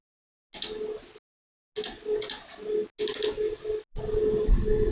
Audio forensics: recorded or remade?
recorded